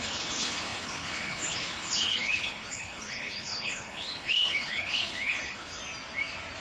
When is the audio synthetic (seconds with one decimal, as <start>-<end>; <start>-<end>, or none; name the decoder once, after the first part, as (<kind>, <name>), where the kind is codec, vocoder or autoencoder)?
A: 0.0-5.8 (codec, HILCodec)